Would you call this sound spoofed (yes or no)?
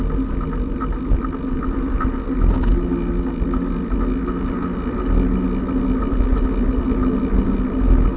no